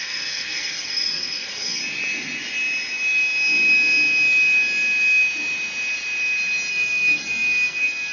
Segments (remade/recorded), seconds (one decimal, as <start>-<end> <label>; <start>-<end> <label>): 0.0-1.8 remade; 1.8-6.7 recorded; 6.7-8.1 remade